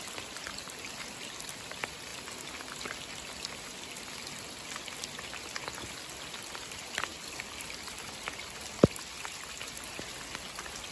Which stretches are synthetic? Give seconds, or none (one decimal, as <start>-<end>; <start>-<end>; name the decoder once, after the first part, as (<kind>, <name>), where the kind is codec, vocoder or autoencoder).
none